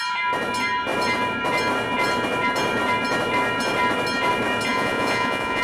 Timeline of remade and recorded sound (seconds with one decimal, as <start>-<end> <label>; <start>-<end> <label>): 0.0-4.7 recorded; 4.7-5.6 remade